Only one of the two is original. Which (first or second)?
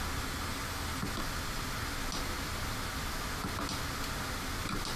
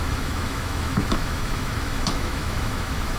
first